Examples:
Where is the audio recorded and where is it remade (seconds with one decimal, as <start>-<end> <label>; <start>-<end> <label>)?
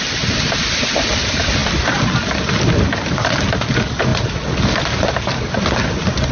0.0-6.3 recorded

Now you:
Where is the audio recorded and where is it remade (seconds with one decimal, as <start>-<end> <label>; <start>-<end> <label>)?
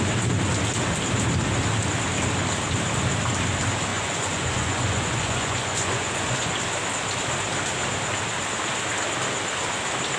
0.0-3.9 recorded; 3.9-6.5 remade; 6.5-10.2 recorded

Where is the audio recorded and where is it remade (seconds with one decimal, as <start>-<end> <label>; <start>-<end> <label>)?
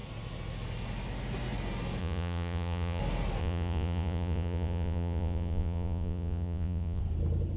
0.0-2.0 recorded; 2.0-3.0 remade; 3.0-3.4 recorded; 3.4-7.0 remade; 7.0-7.6 recorded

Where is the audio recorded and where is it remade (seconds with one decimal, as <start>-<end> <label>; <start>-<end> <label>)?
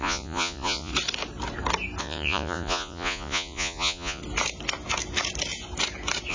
0.0-0.9 remade; 0.9-2.0 recorded; 2.0-4.2 remade; 4.2-6.3 recorded